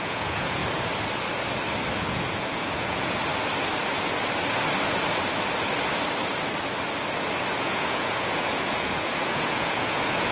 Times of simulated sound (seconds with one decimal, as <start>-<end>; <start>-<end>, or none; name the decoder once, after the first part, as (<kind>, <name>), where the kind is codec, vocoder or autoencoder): 0.0-0.6 (vocoder, Vocos); 2.1-3.2; 7.5-10.3